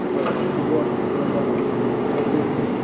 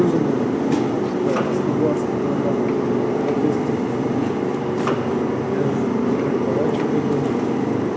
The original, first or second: second